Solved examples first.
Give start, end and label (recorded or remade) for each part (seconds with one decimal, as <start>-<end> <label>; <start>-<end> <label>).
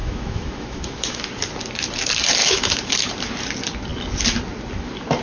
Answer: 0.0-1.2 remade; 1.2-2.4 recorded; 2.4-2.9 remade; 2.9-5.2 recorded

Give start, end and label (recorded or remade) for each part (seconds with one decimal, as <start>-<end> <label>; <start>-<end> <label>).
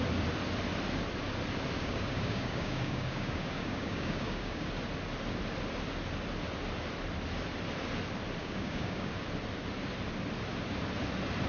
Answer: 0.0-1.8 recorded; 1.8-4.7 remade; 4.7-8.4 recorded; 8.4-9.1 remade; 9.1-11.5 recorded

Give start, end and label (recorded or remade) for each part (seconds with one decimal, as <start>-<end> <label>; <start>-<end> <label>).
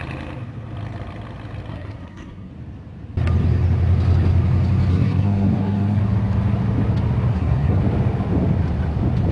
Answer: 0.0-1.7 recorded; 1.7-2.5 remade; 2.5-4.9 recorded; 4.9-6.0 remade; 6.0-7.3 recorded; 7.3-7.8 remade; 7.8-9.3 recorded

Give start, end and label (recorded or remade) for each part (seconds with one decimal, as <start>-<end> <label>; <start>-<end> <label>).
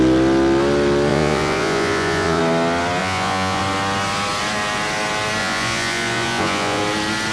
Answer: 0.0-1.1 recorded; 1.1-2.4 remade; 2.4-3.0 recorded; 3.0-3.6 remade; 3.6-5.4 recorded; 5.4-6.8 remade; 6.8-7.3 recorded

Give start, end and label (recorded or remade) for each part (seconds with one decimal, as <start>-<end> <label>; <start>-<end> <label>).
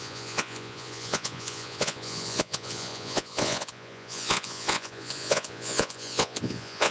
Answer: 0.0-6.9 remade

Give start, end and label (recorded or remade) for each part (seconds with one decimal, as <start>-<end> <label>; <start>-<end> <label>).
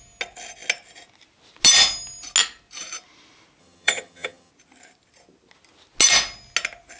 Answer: 0.0-3.6 recorded; 3.6-4.5 remade; 4.5-7.0 recorded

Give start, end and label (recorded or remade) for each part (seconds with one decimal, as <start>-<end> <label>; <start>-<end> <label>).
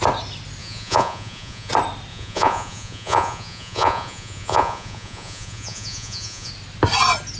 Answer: 0.0-0.6 recorded; 0.6-1.7 remade; 1.7-2.1 recorded; 2.1-6.5 remade; 6.5-7.4 recorded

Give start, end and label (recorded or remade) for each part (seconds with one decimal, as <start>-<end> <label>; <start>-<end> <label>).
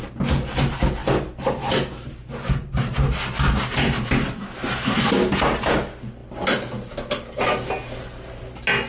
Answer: 0.0-8.9 recorded